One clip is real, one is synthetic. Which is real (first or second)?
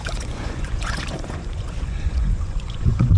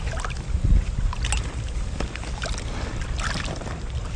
second